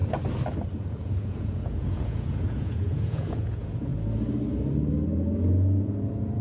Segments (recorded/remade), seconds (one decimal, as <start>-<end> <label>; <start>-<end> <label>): 0.0-0.7 recorded; 0.7-3.9 remade; 3.9-5.8 recorded; 5.8-6.4 remade